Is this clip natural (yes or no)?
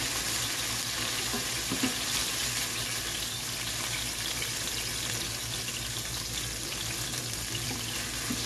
yes